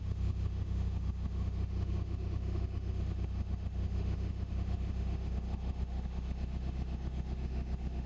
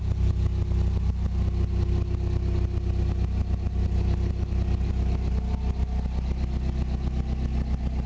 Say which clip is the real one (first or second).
second